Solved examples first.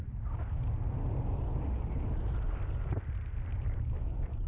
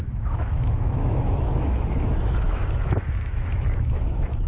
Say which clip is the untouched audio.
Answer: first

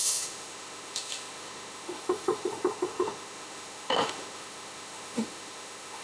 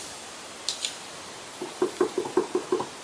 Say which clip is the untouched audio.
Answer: second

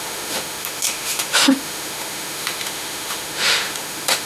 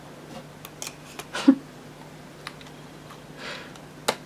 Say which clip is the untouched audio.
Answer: second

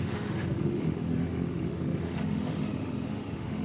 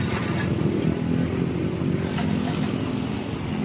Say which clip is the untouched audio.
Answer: second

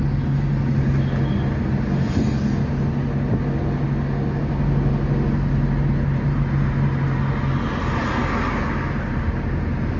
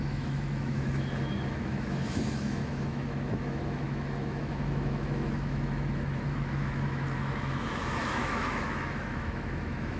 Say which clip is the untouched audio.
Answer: first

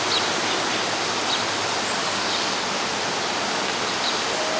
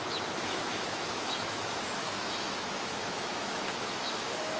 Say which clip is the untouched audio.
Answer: first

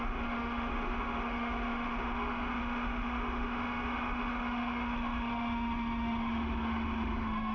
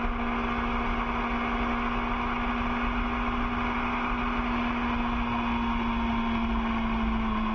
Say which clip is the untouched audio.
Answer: second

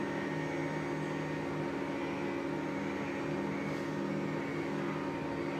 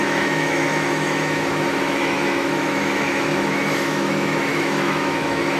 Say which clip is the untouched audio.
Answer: first